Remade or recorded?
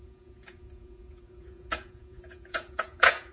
remade